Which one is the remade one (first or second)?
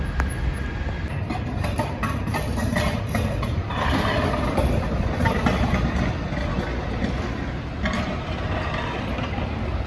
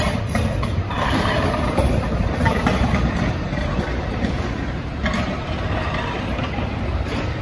second